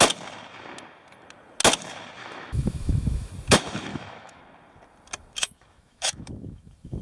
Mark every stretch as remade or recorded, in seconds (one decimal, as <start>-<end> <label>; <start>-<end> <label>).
0.0-2.2 recorded; 2.2-3.3 remade; 3.3-3.9 recorded; 3.9-4.4 remade; 4.4-5.4 recorded; 5.4-7.0 remade